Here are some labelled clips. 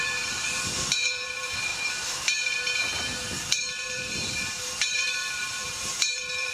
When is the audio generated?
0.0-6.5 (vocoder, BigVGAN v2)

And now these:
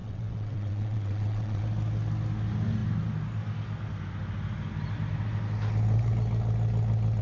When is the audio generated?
0.0-1.6 (vocoder, WaveNeXt)

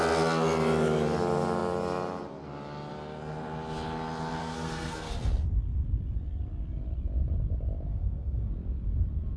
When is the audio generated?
4.4-5.1 (codec, SNAC); 7.9-8.5

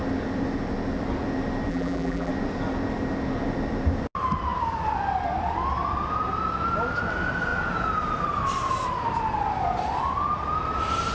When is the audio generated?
1.7-2.3 (vocoder, BigVGAN v2)

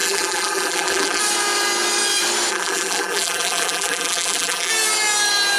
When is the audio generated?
0.0-1.2 (vocoder, BigVGAN v2); 2.5-4.7

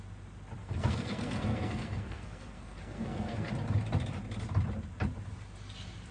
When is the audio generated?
0.6-3.5 (codec, SNAC)

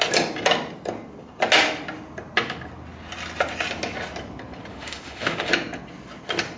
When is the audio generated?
4.7-5.5 (autoencoder, DAC-VAE)

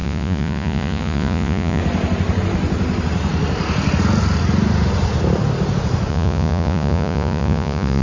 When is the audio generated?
0.0-1.8 (vocoder, Vocos); 6.1-8.0